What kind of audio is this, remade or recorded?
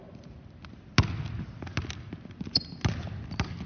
recorded